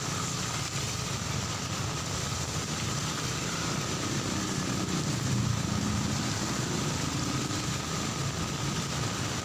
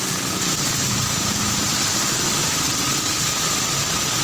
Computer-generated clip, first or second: second